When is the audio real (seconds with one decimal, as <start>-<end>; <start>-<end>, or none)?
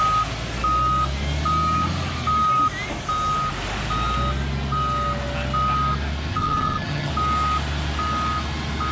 0.0-6.3; 7.1-8.9